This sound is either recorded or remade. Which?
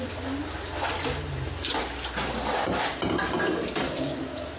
recorded